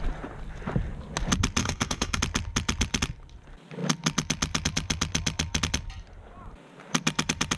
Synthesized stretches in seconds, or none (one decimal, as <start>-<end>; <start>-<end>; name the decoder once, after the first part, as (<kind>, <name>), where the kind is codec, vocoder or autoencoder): 1.6-2.2 (codec, DAC)